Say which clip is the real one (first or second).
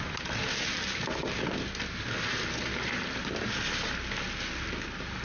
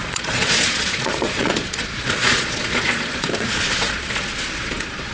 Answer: first